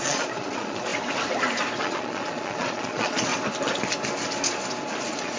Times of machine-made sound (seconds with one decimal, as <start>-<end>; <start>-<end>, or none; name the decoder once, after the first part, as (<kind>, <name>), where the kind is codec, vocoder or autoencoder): 0.0-0.9 (vocoder, Vocos); 1.8-3.3; 4.9-5.4